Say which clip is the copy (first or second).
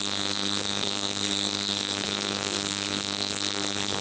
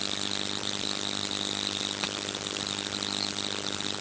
first